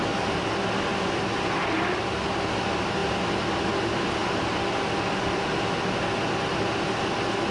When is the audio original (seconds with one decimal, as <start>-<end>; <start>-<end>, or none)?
0.0-7.5